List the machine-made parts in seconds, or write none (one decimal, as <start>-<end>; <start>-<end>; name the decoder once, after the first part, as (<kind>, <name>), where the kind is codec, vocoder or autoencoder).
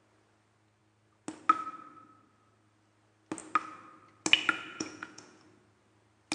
4.7-5.4 (vocoder, Vocos)